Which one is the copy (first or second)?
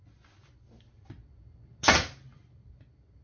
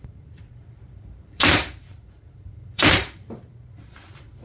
second